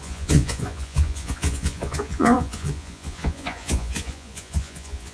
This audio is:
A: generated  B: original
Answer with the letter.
A